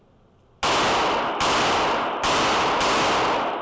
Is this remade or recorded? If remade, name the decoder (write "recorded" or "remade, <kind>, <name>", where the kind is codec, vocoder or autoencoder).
recorded